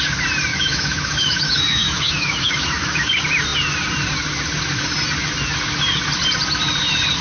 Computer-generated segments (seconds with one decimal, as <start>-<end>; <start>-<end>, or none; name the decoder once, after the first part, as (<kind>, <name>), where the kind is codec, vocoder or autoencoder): 0.5-3.1 (autoencoder, DAC-VAE)